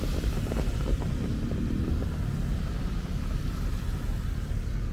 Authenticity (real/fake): real